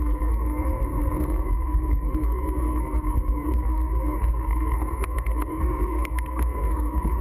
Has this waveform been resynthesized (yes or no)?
yes